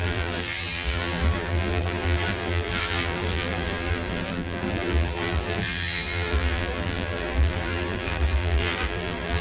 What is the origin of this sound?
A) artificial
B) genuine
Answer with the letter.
A